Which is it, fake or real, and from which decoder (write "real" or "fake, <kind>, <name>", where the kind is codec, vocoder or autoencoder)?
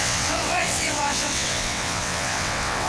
fake, vocoder, WaveNeXt